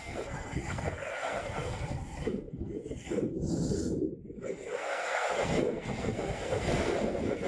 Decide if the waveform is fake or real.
fake